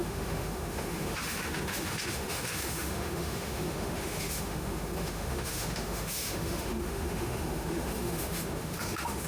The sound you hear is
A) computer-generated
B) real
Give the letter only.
A